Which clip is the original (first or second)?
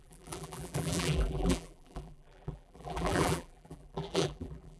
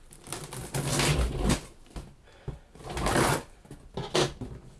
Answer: second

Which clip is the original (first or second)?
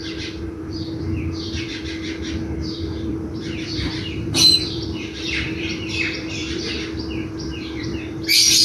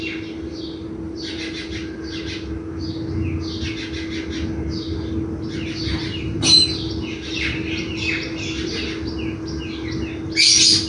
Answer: second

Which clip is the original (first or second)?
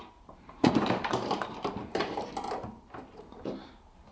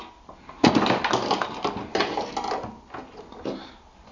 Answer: second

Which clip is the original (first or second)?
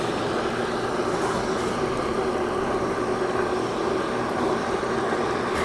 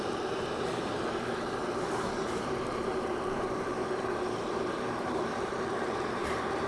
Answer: first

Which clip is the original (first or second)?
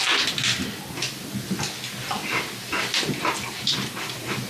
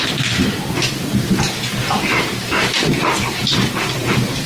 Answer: first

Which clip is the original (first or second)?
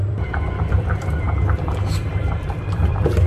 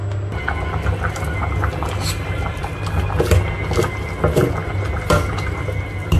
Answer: second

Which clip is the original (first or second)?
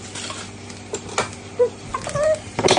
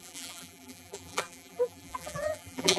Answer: first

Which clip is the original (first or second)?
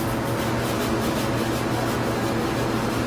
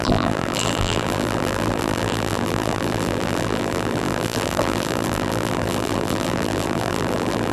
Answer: first